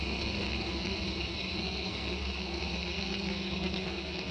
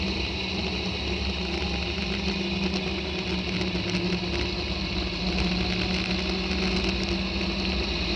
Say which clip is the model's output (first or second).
first